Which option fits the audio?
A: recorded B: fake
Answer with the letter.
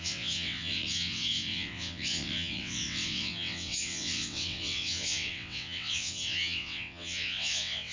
B